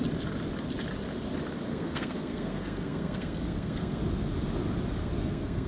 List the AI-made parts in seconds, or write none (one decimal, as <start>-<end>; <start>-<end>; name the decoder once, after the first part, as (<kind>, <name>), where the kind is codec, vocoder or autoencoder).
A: 1.7-4.0 (codec, SNAC); 5.0-5.7